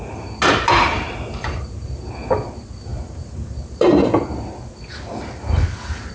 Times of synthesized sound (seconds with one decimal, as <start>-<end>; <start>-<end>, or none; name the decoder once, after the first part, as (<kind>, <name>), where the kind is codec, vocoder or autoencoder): 0.5-2.0 (vocoder, BigVGAN v2); 2.9-4.2